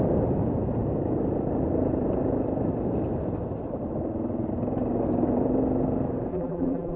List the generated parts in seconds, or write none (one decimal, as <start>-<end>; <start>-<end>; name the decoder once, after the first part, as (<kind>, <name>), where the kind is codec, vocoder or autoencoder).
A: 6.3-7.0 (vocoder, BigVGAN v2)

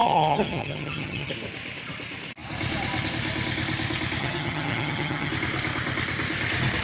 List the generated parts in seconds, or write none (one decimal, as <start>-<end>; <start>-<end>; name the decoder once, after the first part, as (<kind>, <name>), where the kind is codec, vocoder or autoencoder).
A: 0.0-1.3 (vocoder, HiFi-GAN); 4.2-5.3

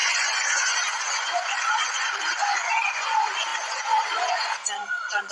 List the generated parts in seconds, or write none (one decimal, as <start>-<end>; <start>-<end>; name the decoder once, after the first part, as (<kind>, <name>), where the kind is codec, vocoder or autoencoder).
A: 0.0-5.3 (vocoder, Vocos)

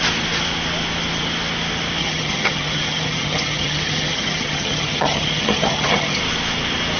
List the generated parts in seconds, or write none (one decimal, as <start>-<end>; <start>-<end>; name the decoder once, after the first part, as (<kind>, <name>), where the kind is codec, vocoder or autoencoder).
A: 2.0-6.2 (vocoder, HiFi-GAN)

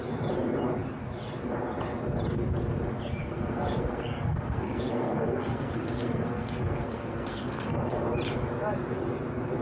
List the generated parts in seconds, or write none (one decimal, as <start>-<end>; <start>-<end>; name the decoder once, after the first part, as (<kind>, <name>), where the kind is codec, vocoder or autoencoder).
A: 3.2-8.0 (codec, SNAC)